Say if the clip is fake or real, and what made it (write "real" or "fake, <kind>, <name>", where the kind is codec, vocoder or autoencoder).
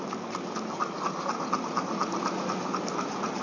real